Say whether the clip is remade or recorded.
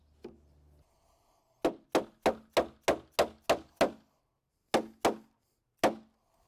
recorded